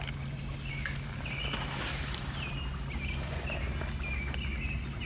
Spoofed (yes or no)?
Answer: no